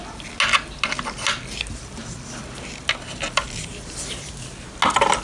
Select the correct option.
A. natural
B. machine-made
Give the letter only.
A